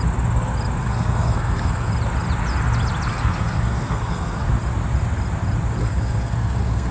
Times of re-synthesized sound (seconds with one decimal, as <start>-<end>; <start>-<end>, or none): 0.8-1.9; 3.1-4.5; 5.8-6.9